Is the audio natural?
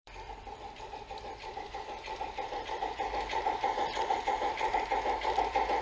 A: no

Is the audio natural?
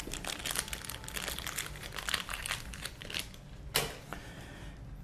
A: yes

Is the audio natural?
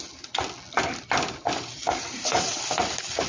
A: yes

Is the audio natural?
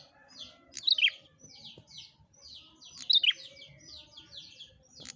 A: yes